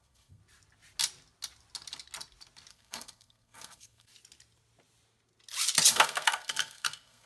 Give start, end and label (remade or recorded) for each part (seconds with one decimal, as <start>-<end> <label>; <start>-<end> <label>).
0.0-0.4 remade; 0.4-2.7 recorded; 2.7-4.1 remade; 4.1-5.9 recorded; 5.9-7.3 remade